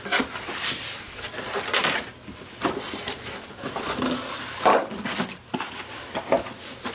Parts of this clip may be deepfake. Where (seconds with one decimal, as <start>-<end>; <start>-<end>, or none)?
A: 4.7-5.8